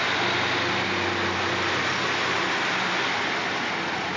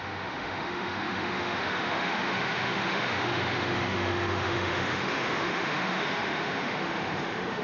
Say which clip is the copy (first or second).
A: second